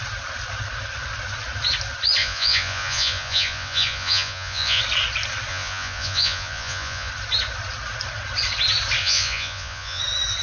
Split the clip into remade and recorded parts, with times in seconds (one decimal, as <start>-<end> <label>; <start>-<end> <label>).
0.0-2.2 recorded; 2.2-4.8 remade; 4.8-5.5 recorded; 5.5-7.1 remade; 7.1-9.0 recorded; 9.0-10.0 remade; 10.0-10.4 recorded